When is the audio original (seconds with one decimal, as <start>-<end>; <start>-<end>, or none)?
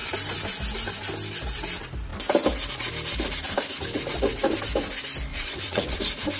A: 0.0-5.3; 6.0-6.4